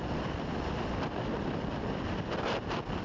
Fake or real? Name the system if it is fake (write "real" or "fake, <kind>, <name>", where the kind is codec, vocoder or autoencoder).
real